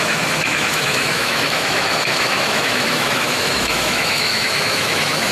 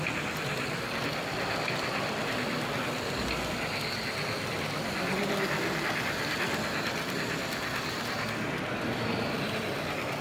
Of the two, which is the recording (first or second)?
second